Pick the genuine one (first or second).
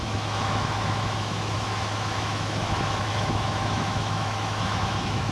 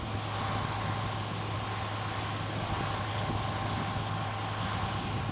second